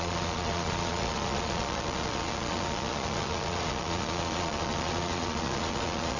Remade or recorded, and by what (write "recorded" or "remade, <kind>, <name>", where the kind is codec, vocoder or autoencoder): remade, vocoder, Vocos